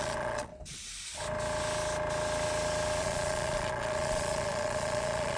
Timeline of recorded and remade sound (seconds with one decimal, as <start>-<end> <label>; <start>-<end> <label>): 0.0-0.5 remade; 0.5-3.0 recorded; 3.0-5.4 remade